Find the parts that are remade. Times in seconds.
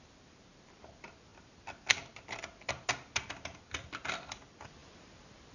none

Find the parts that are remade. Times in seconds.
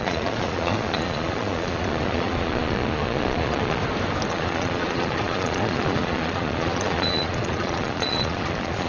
0.0-3.8 (vocoder, Vocos); 4.3-8.9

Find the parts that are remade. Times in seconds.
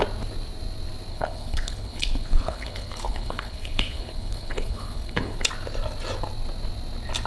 1.1-5.5 (codec, HILCodec)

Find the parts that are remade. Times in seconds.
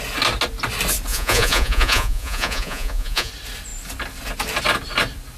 1.1-3.3 (vocoder, Vocos)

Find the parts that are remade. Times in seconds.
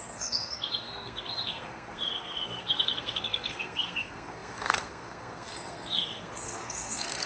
0.0-7.3 (codec, SNAC)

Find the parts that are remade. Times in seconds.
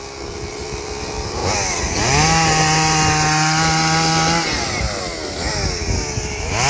none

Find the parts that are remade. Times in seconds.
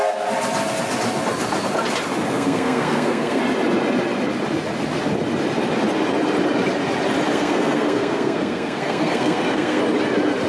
2.2-3.4 (codec, SNAC); 7.3-9.8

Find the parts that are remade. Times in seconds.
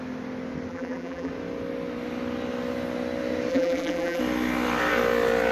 0.7-1.3 (vocoder, BigVGAN v2); 3.5-4.2